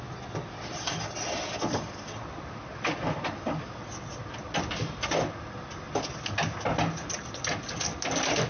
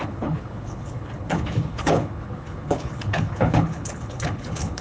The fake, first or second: second